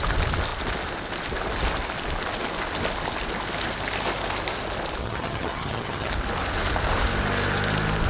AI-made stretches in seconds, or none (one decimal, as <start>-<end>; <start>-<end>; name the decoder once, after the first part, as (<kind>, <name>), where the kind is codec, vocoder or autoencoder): 5.0-6.1 (vocoder, HiFi-GAN)